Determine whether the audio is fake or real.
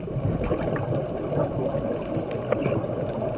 real